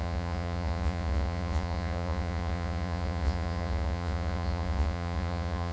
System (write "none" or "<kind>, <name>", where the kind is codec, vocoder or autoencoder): vocoder, Vocos